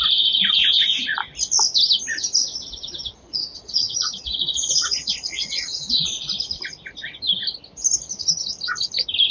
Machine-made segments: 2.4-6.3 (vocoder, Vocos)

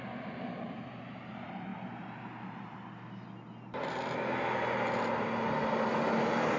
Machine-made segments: none

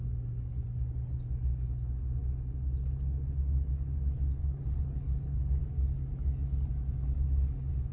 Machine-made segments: 4.4-5.6 (codec, HILCodec)

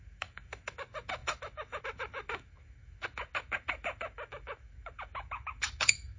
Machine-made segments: 0.0-6.2 (autoencoder, DAC-VAE)

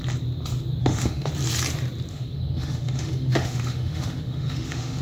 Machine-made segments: 0.8-1.3 (autoencoder, DAC-VAE); 2.1-5.0